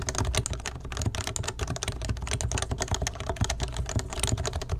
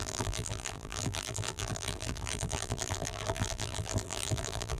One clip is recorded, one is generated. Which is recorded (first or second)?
first